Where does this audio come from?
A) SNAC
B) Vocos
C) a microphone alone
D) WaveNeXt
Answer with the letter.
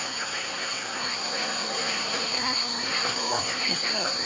A